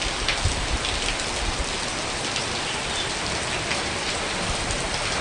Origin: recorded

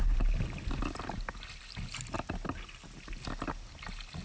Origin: recorded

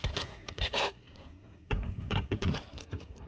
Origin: remade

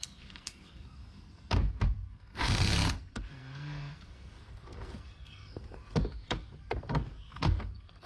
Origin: remade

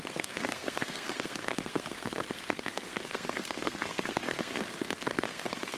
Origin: remade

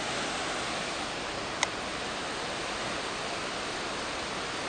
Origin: recorded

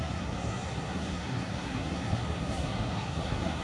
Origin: remade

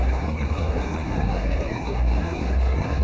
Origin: remade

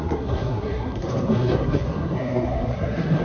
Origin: remade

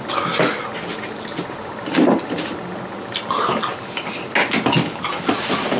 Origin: recorded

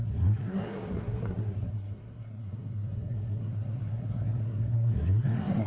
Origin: remade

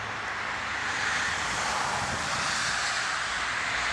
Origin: recorded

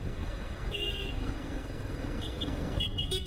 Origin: remade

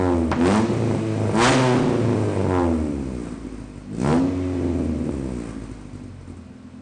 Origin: recorded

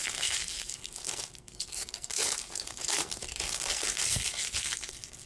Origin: remade